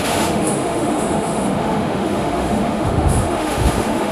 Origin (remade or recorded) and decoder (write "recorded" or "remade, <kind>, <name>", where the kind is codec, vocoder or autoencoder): remade, autoencoder, DAC-VAE